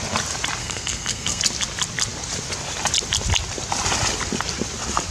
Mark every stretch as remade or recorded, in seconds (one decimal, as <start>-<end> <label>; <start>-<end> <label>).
0.0-0.6 recorded; 0.6-1.4 remade; 1.4-5.1 recorded